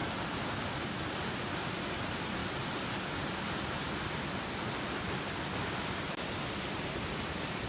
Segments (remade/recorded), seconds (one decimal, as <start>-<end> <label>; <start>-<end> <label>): 0.0-7.7 recorded